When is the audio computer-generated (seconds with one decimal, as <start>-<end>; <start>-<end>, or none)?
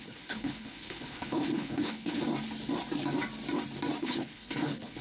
0.0-2.2; 4.0-5.0